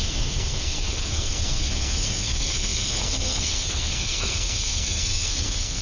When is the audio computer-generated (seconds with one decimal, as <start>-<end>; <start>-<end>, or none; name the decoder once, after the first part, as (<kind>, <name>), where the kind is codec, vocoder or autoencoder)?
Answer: 0.0-5.8 (codec, SNAC)